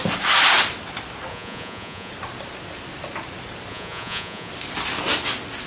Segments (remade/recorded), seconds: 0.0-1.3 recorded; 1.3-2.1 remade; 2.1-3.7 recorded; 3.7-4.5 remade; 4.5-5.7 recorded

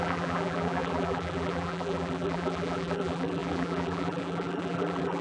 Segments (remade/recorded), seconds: 0.0-5.2 remade